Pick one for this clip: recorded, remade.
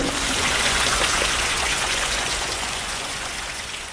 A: remade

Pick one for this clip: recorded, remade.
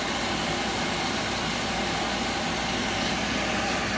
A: recorded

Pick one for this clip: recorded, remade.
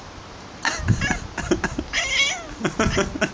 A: recorded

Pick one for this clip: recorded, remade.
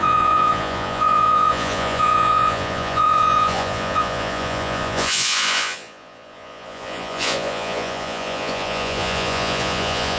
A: remade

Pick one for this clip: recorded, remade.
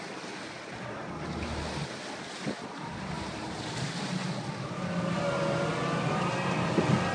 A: recorded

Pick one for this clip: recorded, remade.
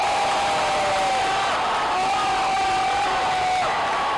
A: recorded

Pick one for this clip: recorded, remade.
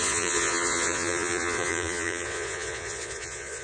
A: remade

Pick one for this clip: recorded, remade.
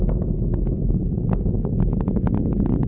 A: recorded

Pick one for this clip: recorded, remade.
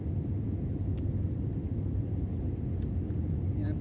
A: recorded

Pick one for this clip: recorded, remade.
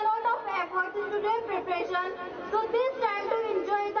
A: recorded